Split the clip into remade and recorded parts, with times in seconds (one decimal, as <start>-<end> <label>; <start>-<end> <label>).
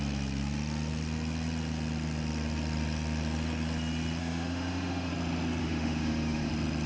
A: 0.0-4.2 recorded; 4.2-5.1 remade; 5.1-5.6 recorded; 5.6-6.5 remade; 6.5-6.9 recorded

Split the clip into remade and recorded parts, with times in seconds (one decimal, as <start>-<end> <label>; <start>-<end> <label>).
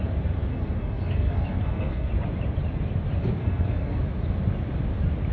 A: 0.0-0.5 recorded; 0.5-2.1 remade; 2.1-3.4 recorded; 3.4-4.0 remade; 4.0-5.3 recorded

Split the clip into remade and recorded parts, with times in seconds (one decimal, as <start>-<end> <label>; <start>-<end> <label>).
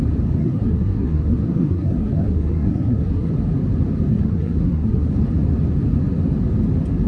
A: 0.0-0.4 recorded; 0.4-3.3 remade; 3.3-4.1 recorded; 4.1-5.1 remade; 5.1-7.1 recorded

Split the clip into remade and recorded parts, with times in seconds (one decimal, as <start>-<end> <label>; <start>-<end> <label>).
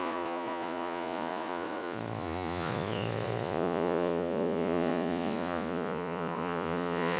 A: 0.0-7.2 remade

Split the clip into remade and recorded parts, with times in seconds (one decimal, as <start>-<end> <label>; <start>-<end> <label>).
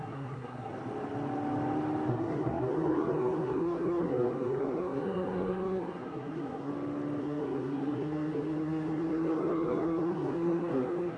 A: 0.0-0.7 remade; 0.7-2.1 recorded; 2.1-6.7 remade; 6.7-7.2 recorded; 7.2-11.2 remade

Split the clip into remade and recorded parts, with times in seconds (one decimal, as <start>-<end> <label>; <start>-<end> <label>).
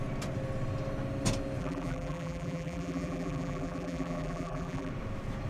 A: 0.0-1.6 recorded; 1.6-4.9 remade; 4.9-5.5 recorded